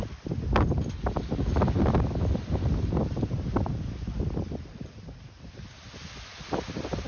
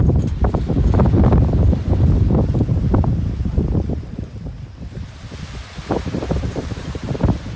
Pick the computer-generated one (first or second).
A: second